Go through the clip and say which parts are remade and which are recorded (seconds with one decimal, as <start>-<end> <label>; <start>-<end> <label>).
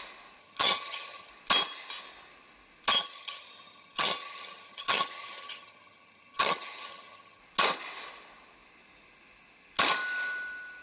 0.0-0.4 recorded; 0.4-1.3 remade; 1.3-2.9 recorded; 2.9-7.4 remade; 7.4-10.8 recorded